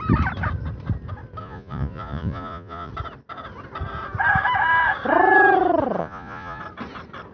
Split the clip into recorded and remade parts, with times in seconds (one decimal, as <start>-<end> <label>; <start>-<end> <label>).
0.0-1.4 recorded; 1.4-2.9 remade; 2.9-6.0 recorded; 6.0-6.6 remade; 6.6-7.3 recorded

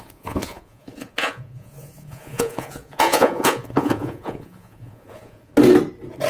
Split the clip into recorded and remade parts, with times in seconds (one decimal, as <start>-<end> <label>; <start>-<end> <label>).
0.0-5.5 remade; 5.5-6.3 recorded

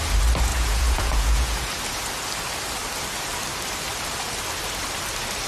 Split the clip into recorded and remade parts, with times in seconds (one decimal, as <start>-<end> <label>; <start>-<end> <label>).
0.0-0.5 recorded; 0.5-1.8 remade; 1.8-5.5 recorded

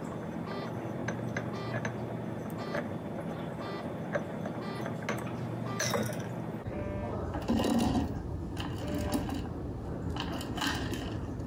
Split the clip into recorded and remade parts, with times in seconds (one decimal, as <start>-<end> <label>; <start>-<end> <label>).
0.0-11.5 recorded

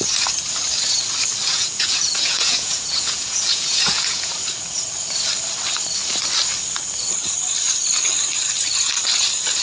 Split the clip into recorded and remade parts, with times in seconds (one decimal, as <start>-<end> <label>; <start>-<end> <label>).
0.0-1.5 recorded; 1.5-4.3 remade; 4.3-9.6 recorded

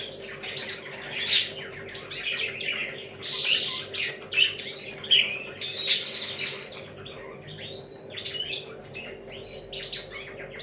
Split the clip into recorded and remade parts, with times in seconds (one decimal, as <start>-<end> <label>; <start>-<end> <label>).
0.0-10.6 recorded

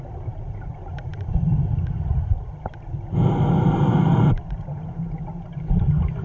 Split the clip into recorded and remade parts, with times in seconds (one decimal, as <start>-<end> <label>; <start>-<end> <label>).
0.0-6.2 recorded